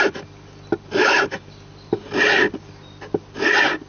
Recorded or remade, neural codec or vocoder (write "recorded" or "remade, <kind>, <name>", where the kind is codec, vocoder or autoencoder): recorded